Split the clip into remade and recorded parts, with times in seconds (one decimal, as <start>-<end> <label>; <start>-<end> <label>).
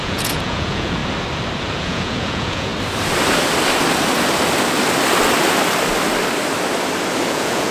0.0-1.0 remade; 1.0-1.6 recorded; 1.6-2.7 remade; 2.7-7.3 recorded; 7.3-7.7 remade